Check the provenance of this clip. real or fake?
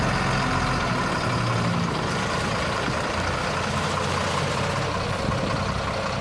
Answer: real